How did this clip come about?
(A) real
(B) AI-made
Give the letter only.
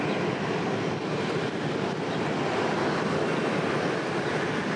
A